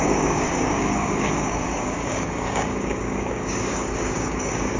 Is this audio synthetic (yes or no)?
yes